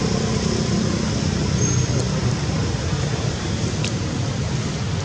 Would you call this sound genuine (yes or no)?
yes